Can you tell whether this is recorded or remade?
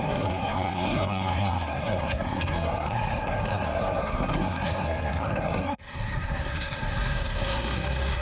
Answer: remade